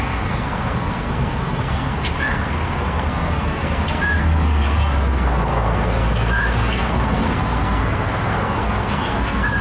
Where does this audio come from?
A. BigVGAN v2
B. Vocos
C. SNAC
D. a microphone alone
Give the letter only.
C